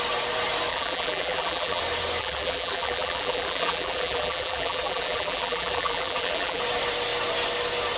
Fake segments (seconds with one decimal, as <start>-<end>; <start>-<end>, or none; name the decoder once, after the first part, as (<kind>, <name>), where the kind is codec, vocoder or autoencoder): 0.7-1.8 (vocoder, BigVGAN v2); 2.2-6.6